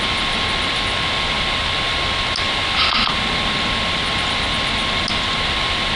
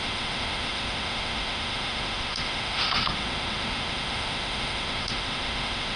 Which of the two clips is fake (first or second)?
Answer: second